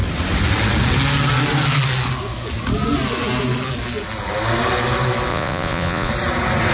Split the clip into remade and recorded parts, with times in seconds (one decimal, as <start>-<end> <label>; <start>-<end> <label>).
0.0-5.3 recorded; 5.3-6.1 remade; 6.1-6.7 recorded